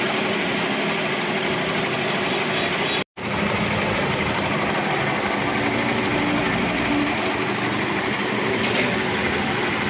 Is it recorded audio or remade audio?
recorded